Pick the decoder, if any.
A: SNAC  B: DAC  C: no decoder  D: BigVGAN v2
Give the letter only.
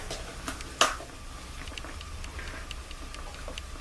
C